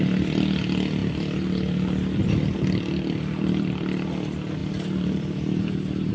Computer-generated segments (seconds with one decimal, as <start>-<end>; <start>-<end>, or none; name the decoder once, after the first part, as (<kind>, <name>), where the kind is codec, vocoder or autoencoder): 1.0-4.1 (vocoder, BigVGAN v2); 4.6-6.1